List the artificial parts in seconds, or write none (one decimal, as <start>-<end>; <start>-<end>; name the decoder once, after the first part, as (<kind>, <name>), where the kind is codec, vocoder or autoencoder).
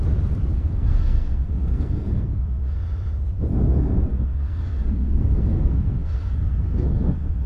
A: 0.5-2.8 (codec, SNAC); 3.5-7.5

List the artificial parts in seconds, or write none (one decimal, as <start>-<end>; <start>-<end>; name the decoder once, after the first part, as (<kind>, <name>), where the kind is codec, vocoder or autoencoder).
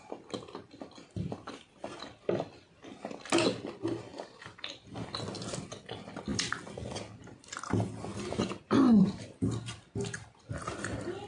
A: none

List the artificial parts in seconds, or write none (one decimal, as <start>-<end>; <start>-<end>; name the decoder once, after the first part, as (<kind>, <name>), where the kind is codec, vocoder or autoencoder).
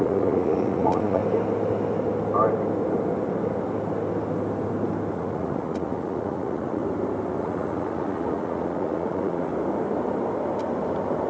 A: 0.0-1.2 (vocoder, Vocos); 5.1-6.8; 7.4-9.5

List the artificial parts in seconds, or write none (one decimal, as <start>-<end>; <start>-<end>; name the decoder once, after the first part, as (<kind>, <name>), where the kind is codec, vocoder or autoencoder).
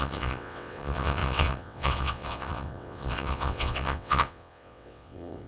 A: 0.0-5.5 (vocoder, WaveNeXt)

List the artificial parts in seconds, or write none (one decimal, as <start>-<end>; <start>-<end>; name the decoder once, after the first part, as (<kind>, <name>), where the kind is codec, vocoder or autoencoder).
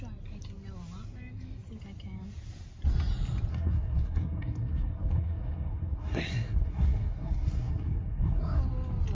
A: 3.5-8.6 (codec, SNAC)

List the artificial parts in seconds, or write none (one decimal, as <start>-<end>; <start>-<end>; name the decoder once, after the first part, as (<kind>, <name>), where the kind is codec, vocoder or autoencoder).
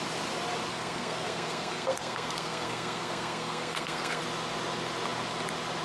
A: 0.7-4.2 (codec, SNAC)